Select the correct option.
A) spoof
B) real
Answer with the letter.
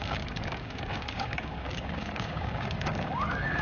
A